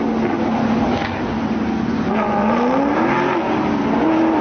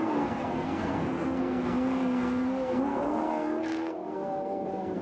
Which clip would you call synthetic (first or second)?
second